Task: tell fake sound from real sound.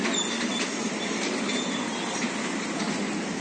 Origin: real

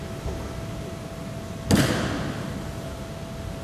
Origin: real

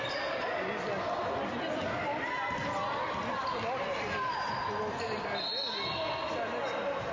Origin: real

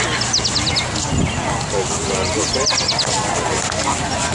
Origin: real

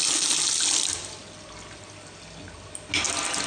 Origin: real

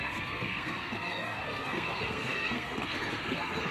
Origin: fake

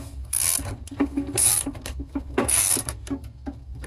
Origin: fake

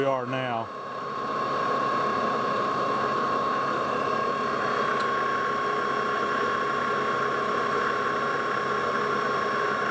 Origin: real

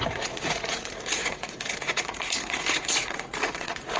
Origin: fake